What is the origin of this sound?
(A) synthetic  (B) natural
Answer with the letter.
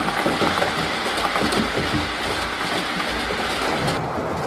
B